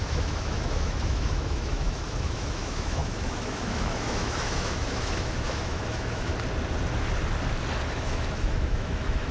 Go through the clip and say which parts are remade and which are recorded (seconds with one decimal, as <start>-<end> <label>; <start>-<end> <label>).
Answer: 0.0-6.3 remade; 6.3-7.9 recorded; 7.9-9.3 remade